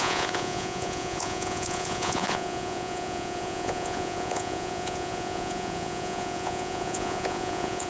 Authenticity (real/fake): fake